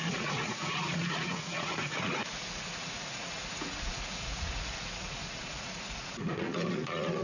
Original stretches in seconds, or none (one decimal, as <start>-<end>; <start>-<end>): none